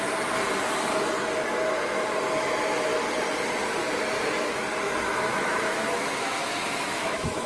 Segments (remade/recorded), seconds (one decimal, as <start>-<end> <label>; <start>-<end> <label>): 0.0-5.3 recorded; 5.3-7.5 remade